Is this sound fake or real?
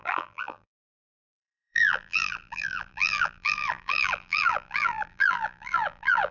fake